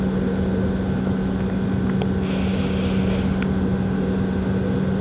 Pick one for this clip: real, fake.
real